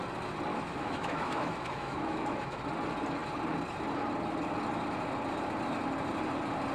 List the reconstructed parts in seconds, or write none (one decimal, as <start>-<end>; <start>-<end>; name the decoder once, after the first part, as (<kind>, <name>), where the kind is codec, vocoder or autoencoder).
0.5-2.6 (autoencoder, DAC-VAE)